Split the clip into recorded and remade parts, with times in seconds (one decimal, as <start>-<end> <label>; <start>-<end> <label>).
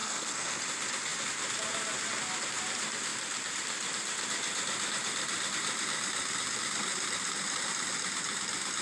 0.0-0.6 remade; 0.6-8.8 recorded